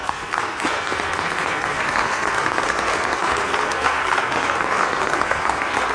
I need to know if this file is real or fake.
fake